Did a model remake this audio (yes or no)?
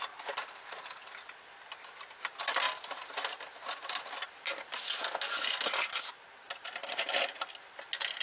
no